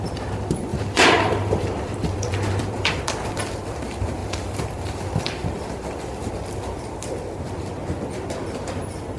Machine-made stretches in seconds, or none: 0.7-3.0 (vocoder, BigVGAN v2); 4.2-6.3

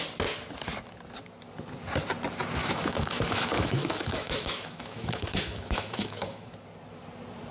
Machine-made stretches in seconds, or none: 2.6-6.5 (autoencoder, DAC-VAE)

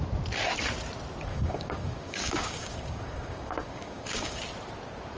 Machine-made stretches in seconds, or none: 1.3-4.4 (codec, DAC)

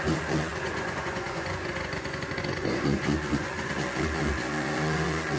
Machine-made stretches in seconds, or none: 0.0-5.4 (vocoder, Vocos)

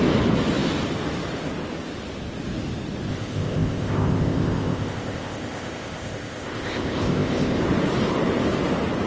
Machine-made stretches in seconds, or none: 3.1-7.6 (codec, ZipCodec)

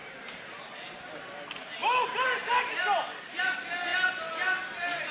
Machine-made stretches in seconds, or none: 0.0-0.6 (vocoder, BigVGAN v2)

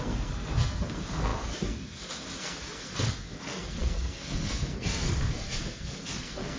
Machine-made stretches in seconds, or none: 0.0-6.6 (codec, SNAC)